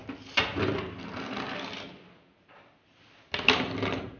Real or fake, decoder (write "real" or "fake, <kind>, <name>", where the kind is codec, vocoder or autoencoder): real